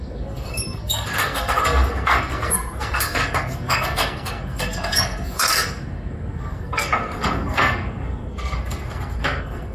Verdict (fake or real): fake